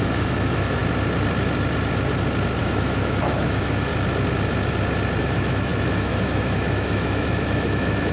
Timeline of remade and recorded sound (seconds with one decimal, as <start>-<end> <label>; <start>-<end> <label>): 0.0-0.8 remade; 0.8-2.6 recorded; 2.6-3.9 remade; 3.9-5.2 recorded; 5.2-8.1 remade